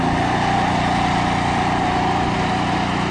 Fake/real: real